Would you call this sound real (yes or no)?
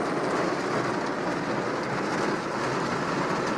yes